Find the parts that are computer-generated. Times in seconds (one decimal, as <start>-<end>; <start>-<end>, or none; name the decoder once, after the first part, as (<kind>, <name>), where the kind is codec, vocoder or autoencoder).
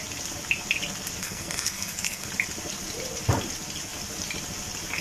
1.2-2.3 (codec, SNAC)